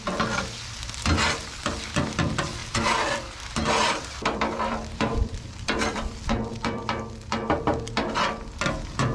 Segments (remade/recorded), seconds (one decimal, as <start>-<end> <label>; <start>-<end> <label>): 0.0-2.6 recorded; 2.6-6.8 remade; 6.8-9.1 recorded